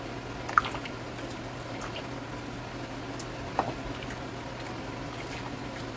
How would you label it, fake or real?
real